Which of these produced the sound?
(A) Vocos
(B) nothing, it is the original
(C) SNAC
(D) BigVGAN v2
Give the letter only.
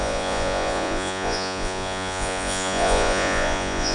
A